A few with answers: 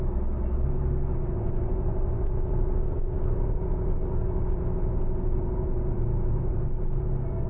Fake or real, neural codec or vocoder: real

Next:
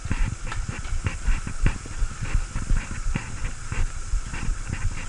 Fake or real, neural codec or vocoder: real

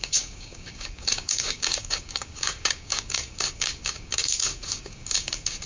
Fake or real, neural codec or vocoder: fake, codec, DAC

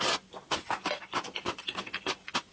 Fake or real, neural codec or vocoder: fake, vocoder, BigVGAN v2